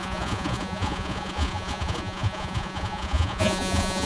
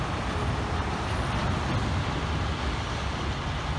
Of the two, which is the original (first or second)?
second